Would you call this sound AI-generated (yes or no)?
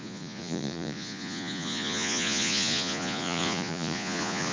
yes